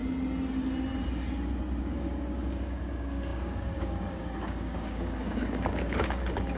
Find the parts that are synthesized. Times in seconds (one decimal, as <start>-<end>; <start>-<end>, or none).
1.8-6.6